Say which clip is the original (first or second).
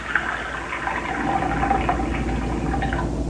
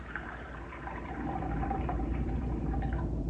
first